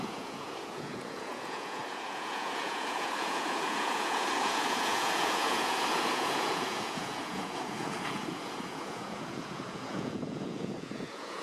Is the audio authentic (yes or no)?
no